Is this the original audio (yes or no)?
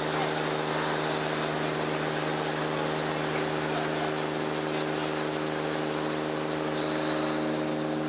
yes